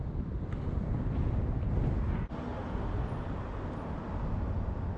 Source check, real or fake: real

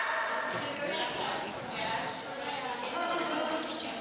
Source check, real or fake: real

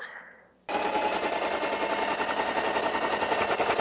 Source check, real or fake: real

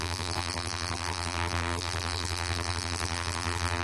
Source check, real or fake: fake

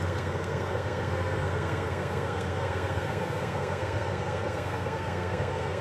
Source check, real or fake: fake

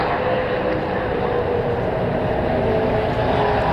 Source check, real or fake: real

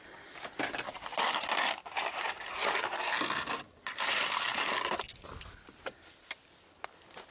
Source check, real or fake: real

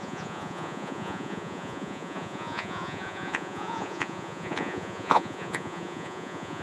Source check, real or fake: fake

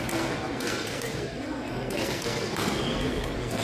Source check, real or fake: fake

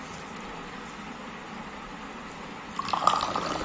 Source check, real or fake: real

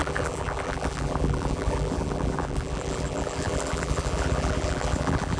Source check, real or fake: fake